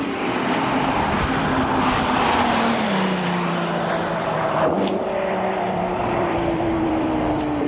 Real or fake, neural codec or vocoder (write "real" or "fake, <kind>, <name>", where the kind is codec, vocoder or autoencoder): fake, vocoder, BigVGAN v2